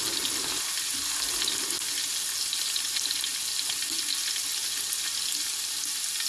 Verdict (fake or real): real